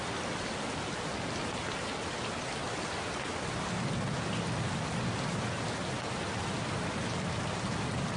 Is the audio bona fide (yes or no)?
yes